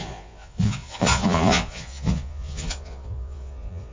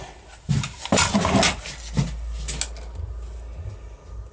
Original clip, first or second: second